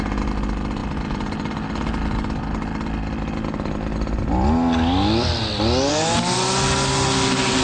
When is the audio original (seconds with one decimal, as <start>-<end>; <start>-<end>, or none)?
0.0-7.6